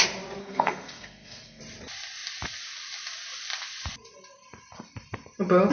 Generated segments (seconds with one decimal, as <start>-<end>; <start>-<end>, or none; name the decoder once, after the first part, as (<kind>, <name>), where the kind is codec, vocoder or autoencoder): 0.4-1.6 (codec, SNAC)